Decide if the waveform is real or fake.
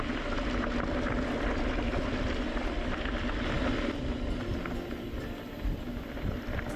real